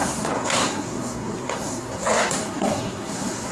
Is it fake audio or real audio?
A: fake